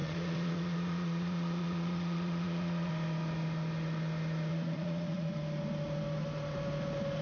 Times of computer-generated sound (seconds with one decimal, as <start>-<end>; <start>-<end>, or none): 0.0-2.9; 4.5-5.3